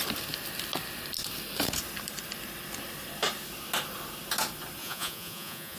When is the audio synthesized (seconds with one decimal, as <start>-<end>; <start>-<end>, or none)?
4.8-5.8